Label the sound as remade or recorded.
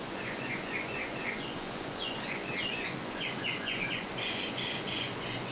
remade